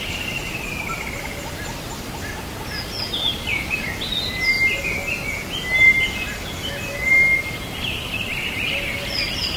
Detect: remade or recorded recorded